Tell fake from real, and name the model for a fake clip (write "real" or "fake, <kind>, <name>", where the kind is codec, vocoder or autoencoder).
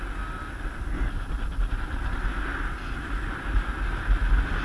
real